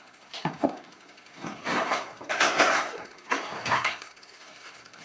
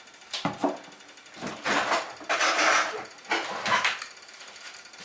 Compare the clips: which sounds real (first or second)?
second